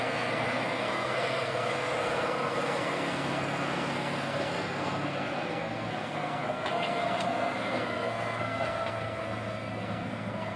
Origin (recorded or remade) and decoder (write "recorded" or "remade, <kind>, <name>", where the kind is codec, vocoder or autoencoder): remade, codec, SNAC